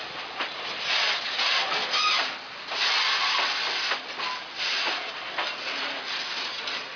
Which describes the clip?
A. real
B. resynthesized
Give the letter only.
A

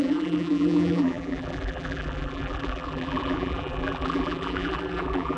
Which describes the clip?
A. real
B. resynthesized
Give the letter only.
B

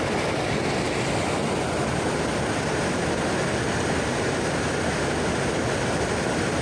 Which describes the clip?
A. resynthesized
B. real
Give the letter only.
B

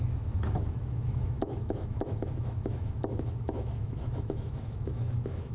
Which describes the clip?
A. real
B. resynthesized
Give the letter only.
B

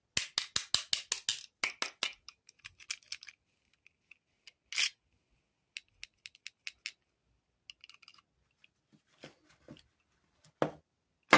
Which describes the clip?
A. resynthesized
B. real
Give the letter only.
B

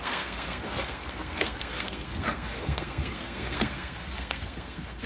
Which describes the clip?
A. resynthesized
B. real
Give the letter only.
A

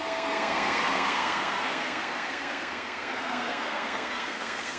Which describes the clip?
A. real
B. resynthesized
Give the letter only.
B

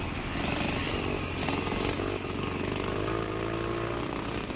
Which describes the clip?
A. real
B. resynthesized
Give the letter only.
A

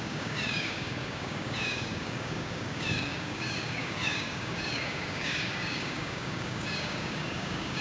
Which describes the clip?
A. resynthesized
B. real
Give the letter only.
A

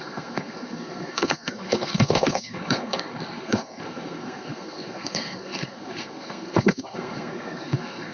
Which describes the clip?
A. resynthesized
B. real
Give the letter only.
A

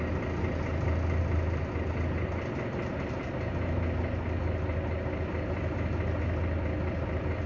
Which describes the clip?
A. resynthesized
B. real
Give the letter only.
B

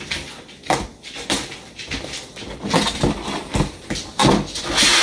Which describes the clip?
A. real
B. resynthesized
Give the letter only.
A